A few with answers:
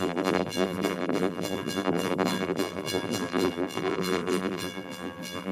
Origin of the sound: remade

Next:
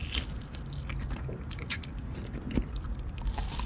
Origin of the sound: remade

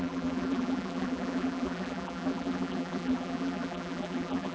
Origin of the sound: remade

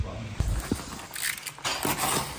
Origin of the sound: recorded